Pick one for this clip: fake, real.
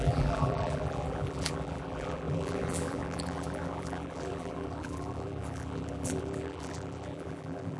fake